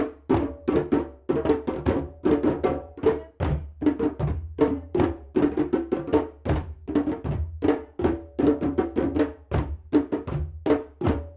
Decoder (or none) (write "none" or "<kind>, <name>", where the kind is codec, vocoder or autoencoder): none